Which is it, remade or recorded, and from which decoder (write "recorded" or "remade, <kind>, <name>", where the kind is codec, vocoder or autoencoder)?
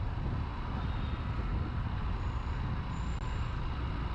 recorded